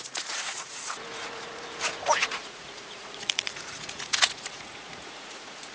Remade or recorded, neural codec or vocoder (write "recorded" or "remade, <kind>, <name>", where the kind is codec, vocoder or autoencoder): remade, vocoder, Vocos